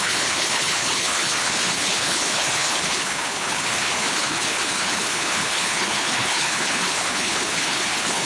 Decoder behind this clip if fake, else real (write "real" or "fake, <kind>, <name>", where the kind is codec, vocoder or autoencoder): fake, codec, HILCodec